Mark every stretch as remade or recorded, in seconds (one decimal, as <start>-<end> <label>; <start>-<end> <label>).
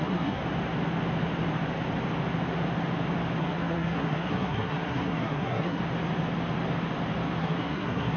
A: 0.0-0.4 remade; 0.4-3.4 recorded; 3.4-5.8 remade; 5.8-7.4 recorded; 7.4-8.2 remade